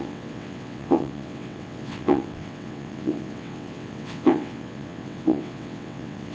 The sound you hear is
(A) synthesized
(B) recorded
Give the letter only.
A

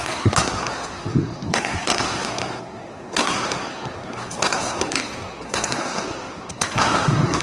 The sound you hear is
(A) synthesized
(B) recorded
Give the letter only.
A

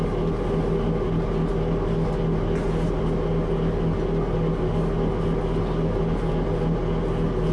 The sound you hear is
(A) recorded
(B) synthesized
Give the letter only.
A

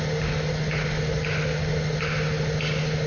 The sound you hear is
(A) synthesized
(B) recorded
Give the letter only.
B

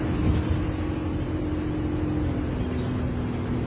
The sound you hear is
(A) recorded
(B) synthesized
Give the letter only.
A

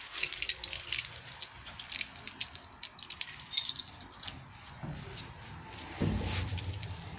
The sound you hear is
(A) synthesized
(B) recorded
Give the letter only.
B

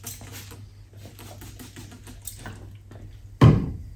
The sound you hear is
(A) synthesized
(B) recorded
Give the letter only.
B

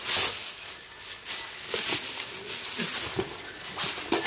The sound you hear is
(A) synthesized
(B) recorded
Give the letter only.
B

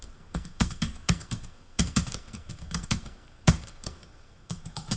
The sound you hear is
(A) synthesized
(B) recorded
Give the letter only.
A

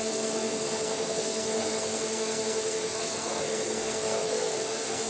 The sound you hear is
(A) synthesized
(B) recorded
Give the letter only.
A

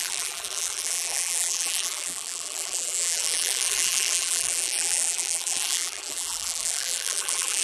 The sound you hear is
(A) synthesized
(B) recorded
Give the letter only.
A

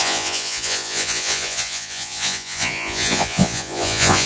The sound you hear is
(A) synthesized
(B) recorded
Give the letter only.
A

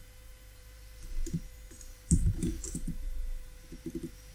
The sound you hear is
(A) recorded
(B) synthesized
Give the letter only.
B